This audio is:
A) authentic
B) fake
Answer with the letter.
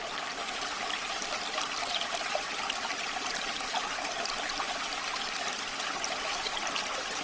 A